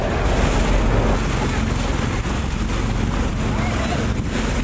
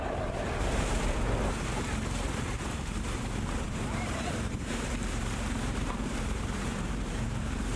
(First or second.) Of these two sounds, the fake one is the second